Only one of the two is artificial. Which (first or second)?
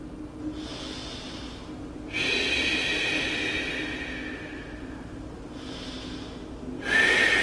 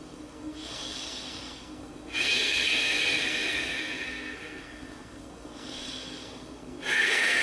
second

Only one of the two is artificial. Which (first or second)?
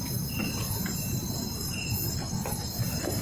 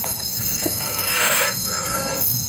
second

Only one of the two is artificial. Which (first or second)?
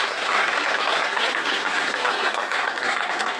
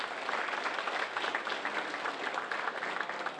first